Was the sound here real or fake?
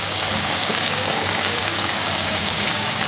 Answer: fake